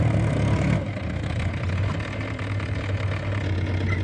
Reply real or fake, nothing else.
real